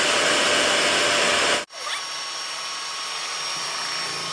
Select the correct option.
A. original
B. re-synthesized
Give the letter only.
A